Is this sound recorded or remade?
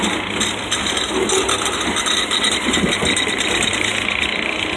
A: recorded